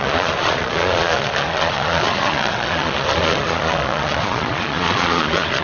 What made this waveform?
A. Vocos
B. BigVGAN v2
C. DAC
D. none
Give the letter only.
A